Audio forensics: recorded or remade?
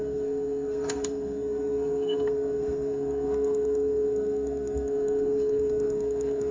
remade